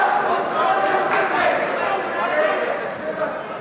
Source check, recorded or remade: recorded